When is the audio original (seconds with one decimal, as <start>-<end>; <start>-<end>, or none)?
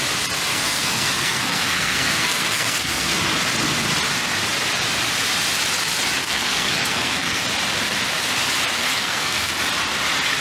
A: 0.0-0.5; 3.2-6.2; 7.4-8.8; 9.5-10.4